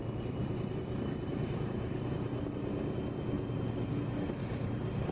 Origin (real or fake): real